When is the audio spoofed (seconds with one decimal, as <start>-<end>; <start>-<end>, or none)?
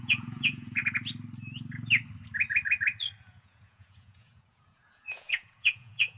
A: 0.0-0.8; 3.2-6.2